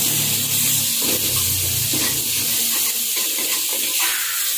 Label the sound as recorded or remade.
recorded